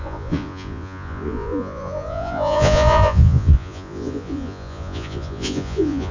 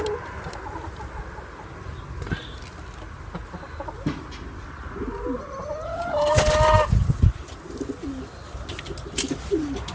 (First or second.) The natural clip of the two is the second